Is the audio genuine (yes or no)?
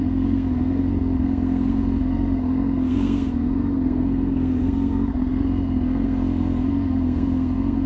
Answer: no